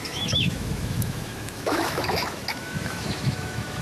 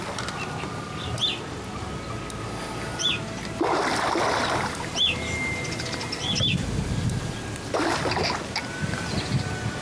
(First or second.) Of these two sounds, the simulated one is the first